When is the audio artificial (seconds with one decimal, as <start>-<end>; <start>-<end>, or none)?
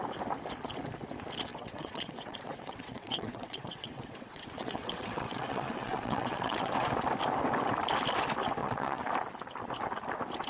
1.5-6.7; 8.6-9.1